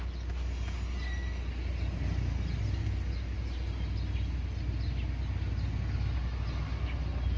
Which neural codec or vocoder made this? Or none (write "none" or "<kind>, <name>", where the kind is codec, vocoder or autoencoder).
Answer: none